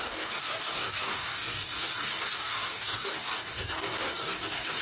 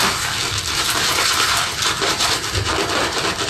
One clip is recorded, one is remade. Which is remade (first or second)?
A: first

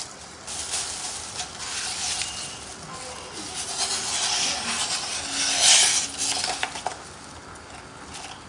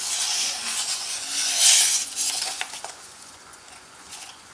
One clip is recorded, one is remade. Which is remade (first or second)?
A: second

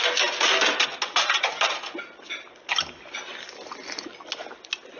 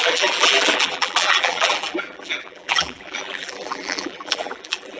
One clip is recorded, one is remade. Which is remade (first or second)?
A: second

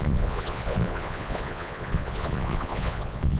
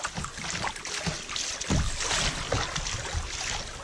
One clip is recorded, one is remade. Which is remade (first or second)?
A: first